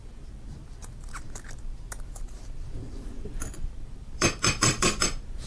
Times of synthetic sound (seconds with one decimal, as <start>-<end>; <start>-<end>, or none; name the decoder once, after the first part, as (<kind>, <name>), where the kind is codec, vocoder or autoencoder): 0.0-5.5 (vocoder, BigVGAN v2)